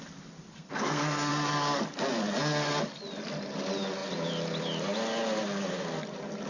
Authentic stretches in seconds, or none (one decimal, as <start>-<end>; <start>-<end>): 0.0-0.5; 1.3-6.5